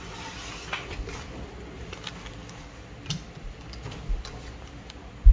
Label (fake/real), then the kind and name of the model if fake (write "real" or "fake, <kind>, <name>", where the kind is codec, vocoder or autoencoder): real